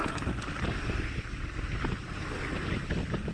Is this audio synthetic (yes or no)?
yes